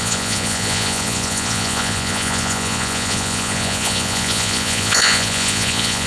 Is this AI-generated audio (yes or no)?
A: yes